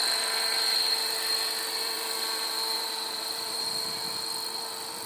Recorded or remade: remade